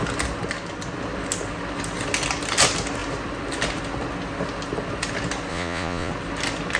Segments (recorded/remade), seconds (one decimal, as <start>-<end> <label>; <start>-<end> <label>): 0.0-5.5 recorded; 5.5-6.1 remade; 6.1-6.8 recorded